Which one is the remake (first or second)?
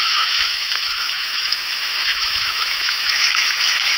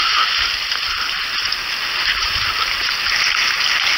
first